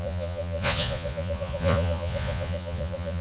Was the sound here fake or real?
fake